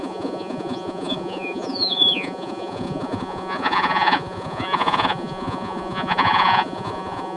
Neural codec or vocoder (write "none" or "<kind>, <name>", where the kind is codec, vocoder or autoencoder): vocoder, Vocos